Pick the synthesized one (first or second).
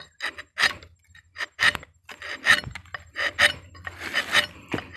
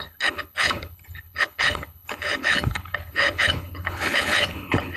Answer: second